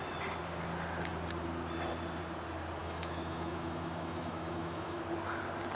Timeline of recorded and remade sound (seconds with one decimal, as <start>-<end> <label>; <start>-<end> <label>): 0.0-2.8 recorded; 2.8-5.0 remade; 5.0-5.7 recorded

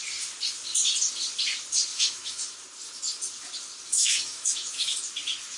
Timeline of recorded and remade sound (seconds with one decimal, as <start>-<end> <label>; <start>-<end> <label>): 0.0-1.9 recorded; 1.9-2.5 remade; 2.5-3.9 recorded; 3.9-5.0 remade; 5.0-5.6 recorded

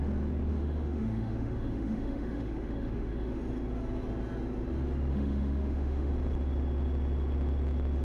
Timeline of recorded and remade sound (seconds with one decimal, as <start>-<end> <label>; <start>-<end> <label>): 0.0-0.5 recorded; 0.5-3.4 remade; 3.4-5.1 recorded; 5.1-6.1 remade; 6.1-8.0 recorded